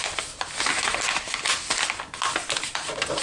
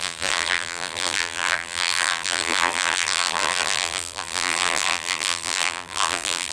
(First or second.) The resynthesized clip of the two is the second